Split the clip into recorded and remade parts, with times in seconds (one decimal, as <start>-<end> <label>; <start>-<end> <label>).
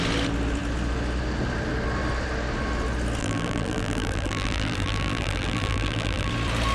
0.0-3.2 recorded; 3.2-6.3 remade; 6.3-6.7 recorded